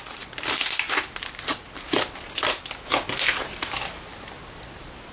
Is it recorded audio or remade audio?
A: recorded